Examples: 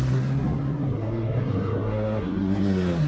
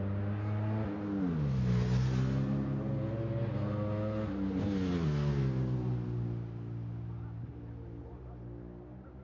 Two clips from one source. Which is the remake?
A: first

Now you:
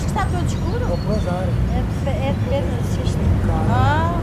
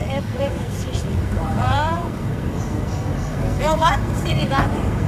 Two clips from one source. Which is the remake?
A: second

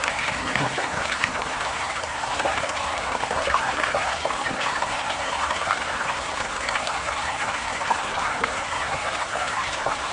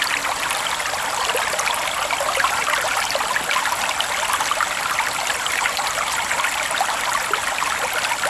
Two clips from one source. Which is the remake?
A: first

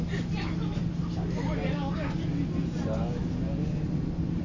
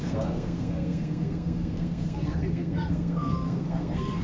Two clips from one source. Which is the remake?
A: second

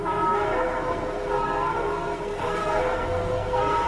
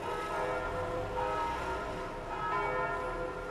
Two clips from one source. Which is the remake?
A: first